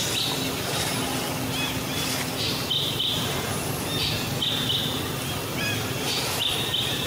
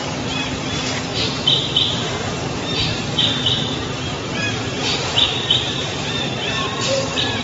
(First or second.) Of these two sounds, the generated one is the second